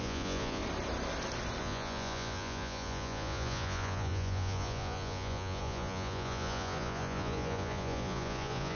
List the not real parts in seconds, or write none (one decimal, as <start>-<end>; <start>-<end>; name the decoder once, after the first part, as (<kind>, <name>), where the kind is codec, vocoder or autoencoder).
0.0-0.6 (vocoder, Vocos); 1.6-8.8